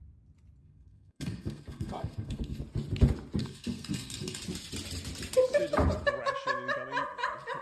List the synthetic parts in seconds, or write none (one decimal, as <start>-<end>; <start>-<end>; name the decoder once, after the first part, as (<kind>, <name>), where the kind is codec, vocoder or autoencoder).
0.6-2.6 (codec, SNAC); 3.4-4.4

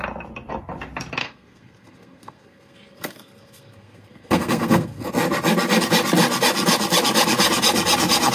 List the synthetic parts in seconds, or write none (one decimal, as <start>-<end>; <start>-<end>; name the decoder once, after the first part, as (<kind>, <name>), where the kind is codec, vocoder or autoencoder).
1.2-5.1 (codec, SNAC)

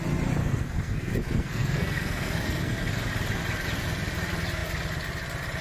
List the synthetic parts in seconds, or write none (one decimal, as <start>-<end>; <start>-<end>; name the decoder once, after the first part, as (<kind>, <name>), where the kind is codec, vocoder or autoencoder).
0.4-2.9 (codec, SNAC)

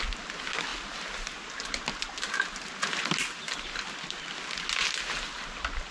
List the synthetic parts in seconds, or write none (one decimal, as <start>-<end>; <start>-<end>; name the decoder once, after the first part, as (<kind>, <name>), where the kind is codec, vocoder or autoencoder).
none